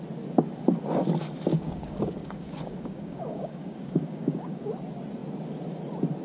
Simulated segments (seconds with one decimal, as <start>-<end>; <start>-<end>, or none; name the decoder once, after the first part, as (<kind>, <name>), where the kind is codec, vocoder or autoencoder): 1.5-4.7 (codec, DAC)